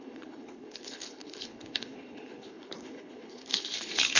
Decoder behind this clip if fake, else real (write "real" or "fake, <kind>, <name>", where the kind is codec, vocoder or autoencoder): fake, codec, HILCodec